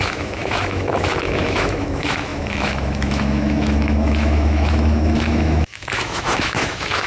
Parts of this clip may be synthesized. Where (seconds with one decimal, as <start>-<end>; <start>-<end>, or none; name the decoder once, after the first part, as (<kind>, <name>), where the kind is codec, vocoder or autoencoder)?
0.0-7.1 (autoencoder, DAC-VAE)

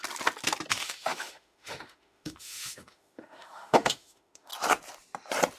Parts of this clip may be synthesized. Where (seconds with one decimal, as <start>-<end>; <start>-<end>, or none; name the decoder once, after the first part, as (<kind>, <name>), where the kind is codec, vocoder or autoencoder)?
0.7-4.5 (autoencoder, DAC-VAE)

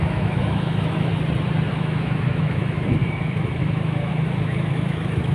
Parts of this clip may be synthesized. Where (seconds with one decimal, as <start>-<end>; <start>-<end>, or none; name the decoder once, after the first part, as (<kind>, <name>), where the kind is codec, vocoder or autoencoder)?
0.0-1.1 (autoencoder, DAC-VAE); 1.7-5.3